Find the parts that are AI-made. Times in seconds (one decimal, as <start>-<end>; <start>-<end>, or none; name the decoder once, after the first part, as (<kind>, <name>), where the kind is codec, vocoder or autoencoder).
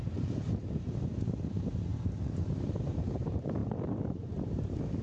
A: 0.0-3.6 (vocoder, BigVGAN v2); 4.1-5.0